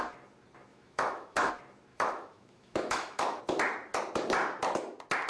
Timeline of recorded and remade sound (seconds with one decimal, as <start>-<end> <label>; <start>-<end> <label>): 0.0-0.7 recorded; 0.7-1.5 remade; 1.5-1.9 recorded; 1.9-3.4 remade; 3.4-5.3 recorded